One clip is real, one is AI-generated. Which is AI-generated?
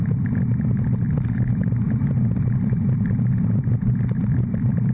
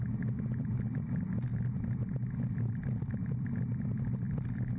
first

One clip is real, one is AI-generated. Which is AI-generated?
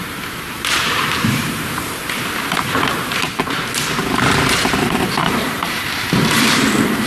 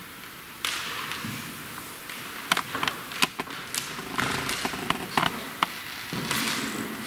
first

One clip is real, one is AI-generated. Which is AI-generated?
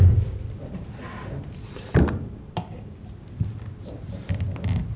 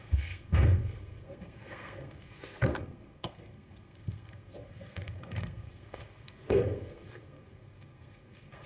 second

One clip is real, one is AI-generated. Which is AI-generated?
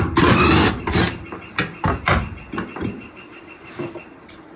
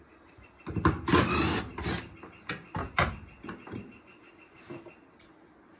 first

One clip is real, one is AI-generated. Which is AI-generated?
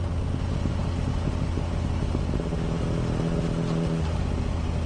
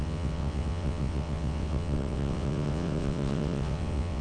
second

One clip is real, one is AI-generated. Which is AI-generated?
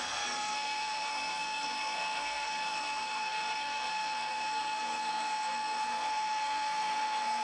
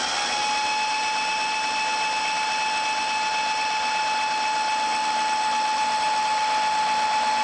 first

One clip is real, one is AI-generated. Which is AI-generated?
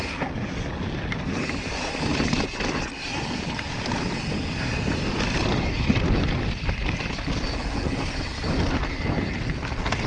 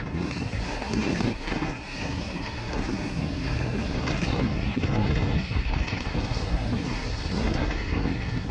second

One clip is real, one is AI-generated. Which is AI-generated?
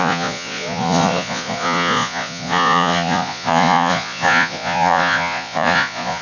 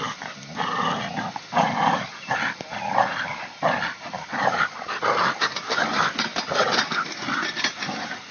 first